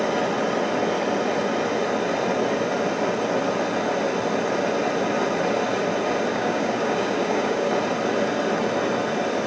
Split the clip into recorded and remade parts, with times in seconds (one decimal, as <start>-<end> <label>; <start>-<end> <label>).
0.0-6.3 recorded; 6.3-7.7 remade; 7.7-9.5 recorded